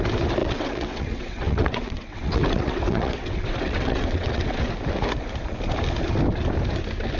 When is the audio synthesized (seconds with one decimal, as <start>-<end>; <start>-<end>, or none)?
0.4-4.7